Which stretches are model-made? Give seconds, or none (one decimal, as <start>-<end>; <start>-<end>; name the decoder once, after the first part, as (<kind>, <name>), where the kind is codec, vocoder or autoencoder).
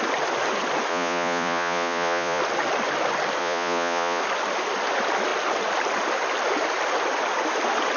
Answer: 0.9-2.4 (vocoder, Vocos); 3.4-4.2